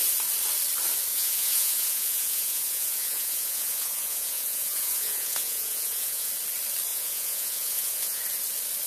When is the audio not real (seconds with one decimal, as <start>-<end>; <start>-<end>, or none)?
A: 1.1-6.3; 6.9-8.2